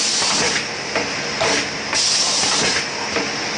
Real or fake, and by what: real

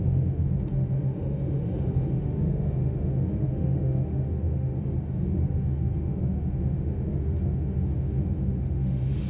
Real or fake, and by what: fake, autoencoder, DAC-VAE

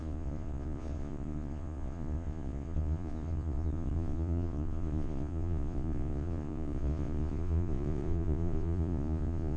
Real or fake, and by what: fake, vocoder, Vocos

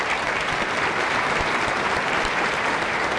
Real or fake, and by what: fake, vocoder, BigVGAN v2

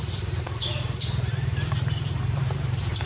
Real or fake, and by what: fake, vocoder, BigVGAN v2